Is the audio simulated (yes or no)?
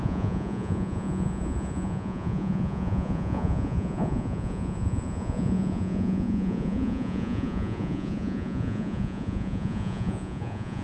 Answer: yes